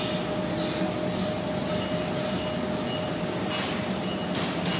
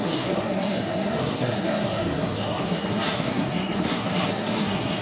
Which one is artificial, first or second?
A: second